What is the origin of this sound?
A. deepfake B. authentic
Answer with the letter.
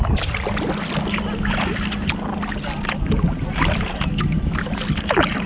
B